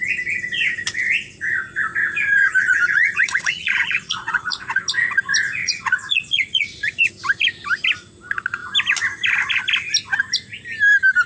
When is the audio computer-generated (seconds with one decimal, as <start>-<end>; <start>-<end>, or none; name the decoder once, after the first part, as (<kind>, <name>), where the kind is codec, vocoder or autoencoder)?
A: 2.0-4.8 (vocoder, Vocos); 5.6-7.1